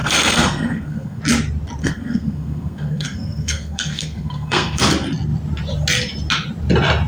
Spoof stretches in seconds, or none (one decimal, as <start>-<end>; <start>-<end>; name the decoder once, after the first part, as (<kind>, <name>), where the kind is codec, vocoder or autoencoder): 0.0-1.2 (codec, SNAC); 1.8-4.8

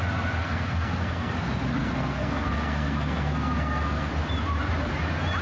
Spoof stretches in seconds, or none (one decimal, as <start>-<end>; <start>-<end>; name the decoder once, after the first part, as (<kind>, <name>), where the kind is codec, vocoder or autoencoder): 0.4-1.3 (codec, SNAC); 1.8-4.1